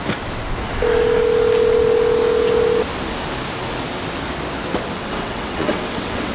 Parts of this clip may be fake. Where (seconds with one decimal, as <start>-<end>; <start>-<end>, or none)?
5.0-6.3